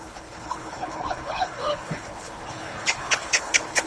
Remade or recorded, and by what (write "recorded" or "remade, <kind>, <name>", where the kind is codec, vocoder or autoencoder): remade, codec, HILCodec